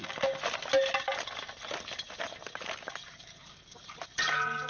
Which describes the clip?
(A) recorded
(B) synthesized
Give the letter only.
A